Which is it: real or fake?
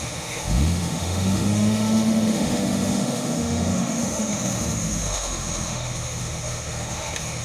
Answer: fake